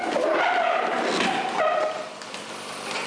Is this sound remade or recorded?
recorded